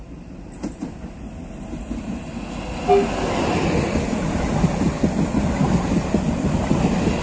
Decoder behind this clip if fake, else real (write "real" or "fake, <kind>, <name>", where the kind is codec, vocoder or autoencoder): real